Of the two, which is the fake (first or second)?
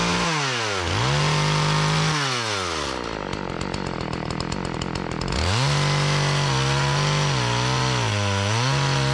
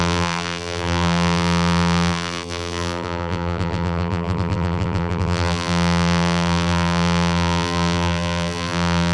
second